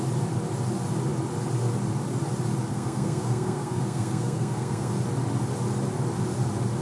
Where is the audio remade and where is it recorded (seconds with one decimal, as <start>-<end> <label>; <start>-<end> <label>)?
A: 0.0-2.7 recorded; 2.7-4.9 remade; 4.9-6.8 recorded